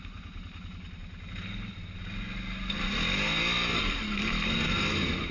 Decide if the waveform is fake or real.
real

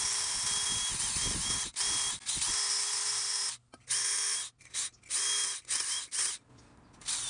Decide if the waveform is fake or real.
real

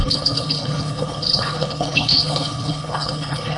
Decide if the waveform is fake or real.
fake